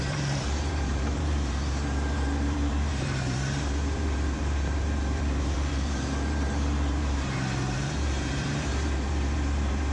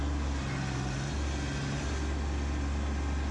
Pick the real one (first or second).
second